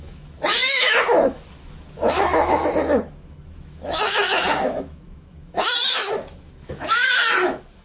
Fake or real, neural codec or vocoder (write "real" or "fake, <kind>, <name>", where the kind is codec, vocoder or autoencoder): fake, autoencoder, DAC-VAE